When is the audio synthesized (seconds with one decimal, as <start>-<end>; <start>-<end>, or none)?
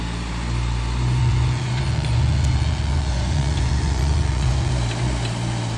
1.2-4.7